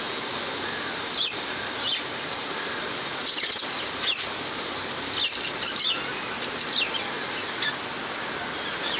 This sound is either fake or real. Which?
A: real